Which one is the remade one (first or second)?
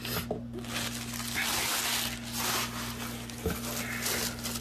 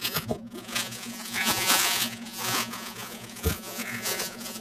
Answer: second